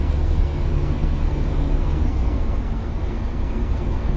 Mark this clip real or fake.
fake